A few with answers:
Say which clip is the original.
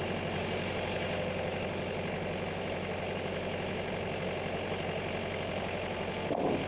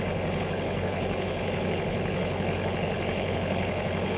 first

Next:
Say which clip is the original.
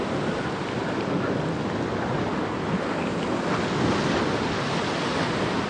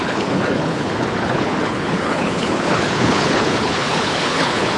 first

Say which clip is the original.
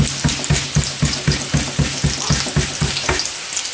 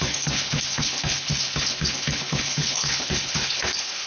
first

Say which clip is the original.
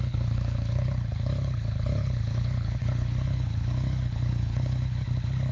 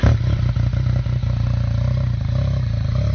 second